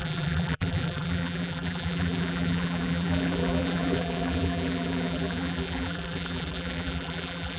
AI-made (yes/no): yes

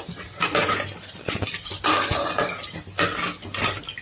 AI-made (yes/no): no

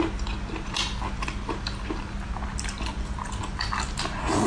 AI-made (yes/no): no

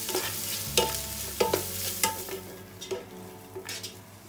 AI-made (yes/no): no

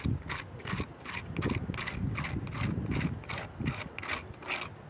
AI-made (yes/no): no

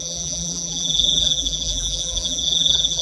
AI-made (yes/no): yes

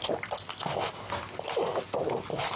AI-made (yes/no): no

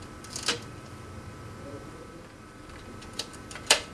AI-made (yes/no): yes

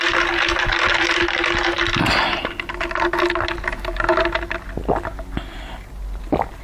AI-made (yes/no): no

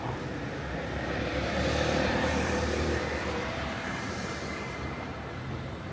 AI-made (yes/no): yes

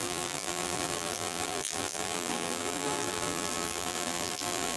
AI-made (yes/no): yes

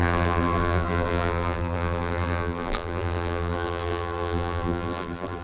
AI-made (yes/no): yes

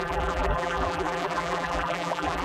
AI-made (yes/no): yes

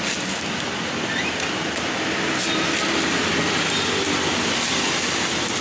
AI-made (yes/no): no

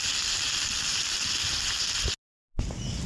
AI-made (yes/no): no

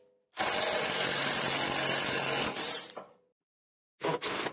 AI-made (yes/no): no